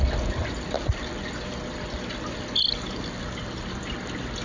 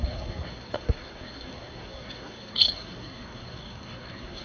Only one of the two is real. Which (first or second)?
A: first